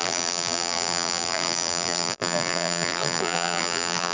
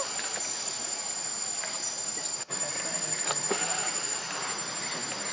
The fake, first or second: first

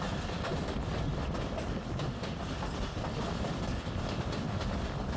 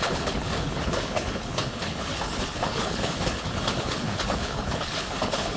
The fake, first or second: second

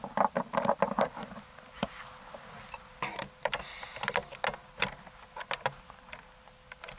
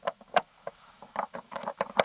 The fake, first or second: second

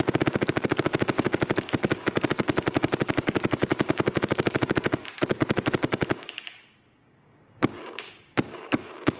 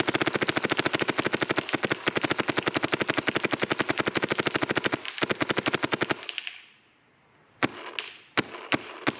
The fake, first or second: first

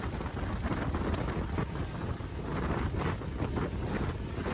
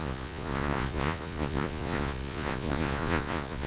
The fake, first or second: second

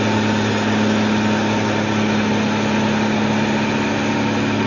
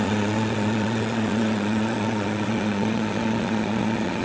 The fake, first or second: second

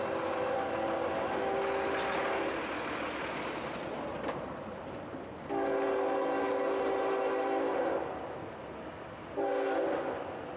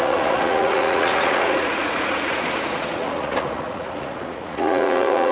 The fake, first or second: second